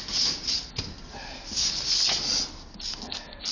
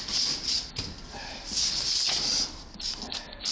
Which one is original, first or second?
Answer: first